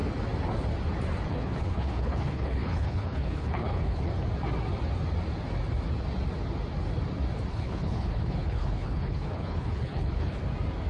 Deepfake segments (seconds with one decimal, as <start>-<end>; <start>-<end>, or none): 1.3-4.1; 7.5-10.4